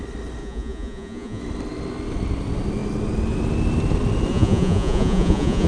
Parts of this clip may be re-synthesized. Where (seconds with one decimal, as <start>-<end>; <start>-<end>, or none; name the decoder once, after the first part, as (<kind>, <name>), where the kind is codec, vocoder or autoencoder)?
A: 0.4-1.4 (vocoder, Vocos); 4.3-5.7